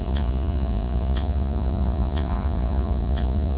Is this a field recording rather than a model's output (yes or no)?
no